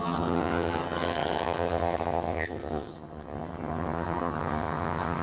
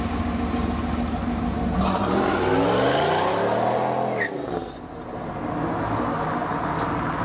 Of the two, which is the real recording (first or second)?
second